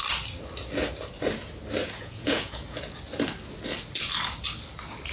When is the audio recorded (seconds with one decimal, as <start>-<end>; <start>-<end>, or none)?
0.0-1.8; 2.8-5.1